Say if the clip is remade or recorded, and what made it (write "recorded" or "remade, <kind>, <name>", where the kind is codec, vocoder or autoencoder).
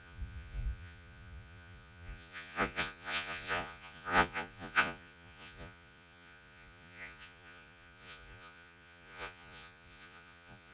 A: remade, vocoder, Vocos